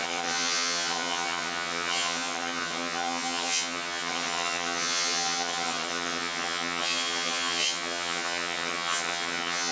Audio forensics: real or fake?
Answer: fake